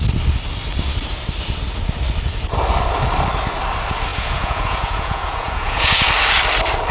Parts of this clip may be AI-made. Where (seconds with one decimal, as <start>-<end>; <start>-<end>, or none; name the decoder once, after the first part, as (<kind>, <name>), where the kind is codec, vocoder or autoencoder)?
4.1-6.1 (vocoder, Vocos)